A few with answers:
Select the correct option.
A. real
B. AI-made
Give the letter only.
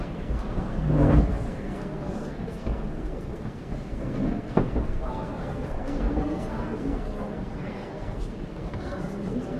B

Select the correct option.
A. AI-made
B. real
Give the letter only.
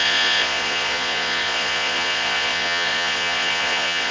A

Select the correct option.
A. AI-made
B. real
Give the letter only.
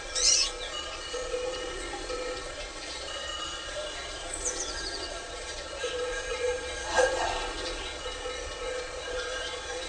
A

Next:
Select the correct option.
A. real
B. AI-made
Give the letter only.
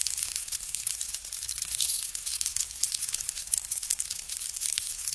B